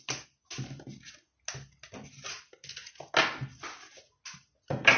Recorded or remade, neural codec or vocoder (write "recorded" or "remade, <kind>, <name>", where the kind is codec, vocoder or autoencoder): recorded